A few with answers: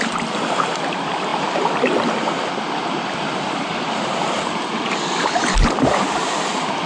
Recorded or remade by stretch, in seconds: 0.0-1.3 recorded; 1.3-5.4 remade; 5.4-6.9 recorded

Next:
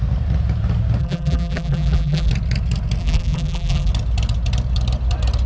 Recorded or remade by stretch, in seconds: 0.0-1.0 recorded; 1.0-2.3 remade; 2.3-3.0 recorded; 3.0-3.9 remade; 3.9-5.5 recorded